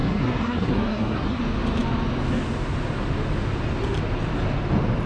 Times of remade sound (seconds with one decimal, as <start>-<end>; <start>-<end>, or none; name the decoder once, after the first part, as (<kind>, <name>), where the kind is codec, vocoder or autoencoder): 0.0-1.4 (codec, SNAC)